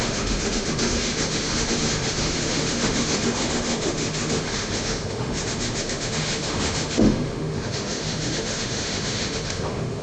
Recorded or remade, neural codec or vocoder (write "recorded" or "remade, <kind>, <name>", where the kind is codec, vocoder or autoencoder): remade, autoencoder, DAC-VAE